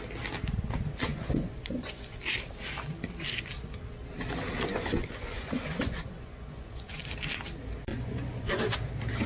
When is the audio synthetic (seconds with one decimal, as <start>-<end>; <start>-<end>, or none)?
1.1-2.2; 4.7-7.0; 7.9-8.6